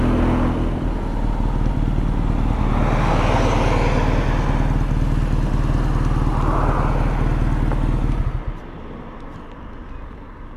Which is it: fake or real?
real